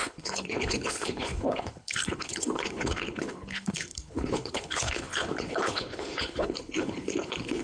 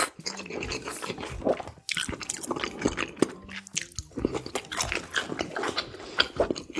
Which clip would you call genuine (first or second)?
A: second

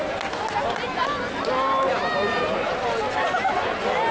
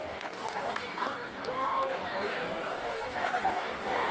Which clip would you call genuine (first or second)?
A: first